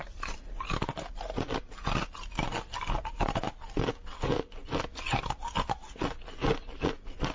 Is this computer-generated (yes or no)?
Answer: no